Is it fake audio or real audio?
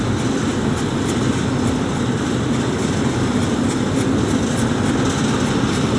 real